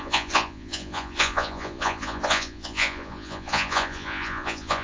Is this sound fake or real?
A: fake